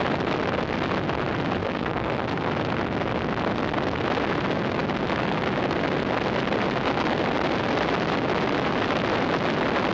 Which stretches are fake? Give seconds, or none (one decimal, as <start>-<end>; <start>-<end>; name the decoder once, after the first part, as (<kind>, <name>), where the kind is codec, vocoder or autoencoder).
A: 1.6-2.5 (codec, SNAC)